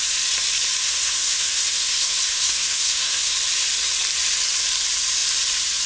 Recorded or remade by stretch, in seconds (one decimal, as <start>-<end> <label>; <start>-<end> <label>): 0.0-0.8 recorded; 0.8-3.3 remade; 3.3-5.9 recorded